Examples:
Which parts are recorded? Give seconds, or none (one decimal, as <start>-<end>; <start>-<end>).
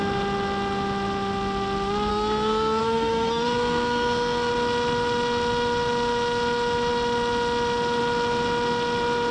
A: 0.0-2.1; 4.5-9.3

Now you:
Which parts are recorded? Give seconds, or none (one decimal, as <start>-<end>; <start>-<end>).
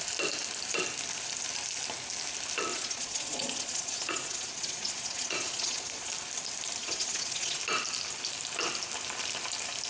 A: 0.0-2.7; 6.1-6.8; 7.6-9.9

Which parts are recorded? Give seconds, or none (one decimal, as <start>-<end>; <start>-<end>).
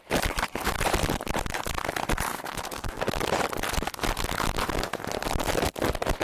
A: 0.0-2.3; 3.0-6.2